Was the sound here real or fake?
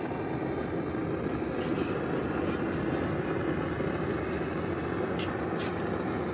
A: real